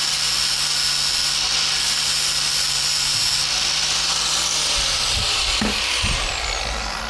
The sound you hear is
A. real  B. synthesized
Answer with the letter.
A